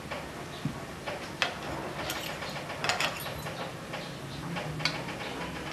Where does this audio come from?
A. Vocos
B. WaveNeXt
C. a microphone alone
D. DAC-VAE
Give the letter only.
C